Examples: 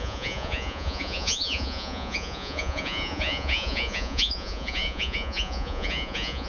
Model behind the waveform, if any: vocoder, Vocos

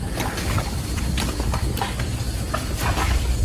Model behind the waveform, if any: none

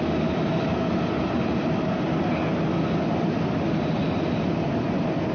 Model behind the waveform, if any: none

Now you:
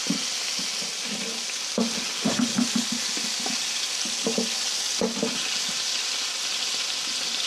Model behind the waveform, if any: none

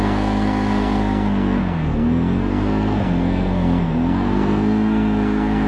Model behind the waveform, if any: codec, SNAC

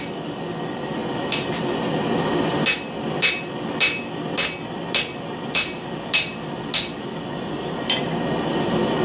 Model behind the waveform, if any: none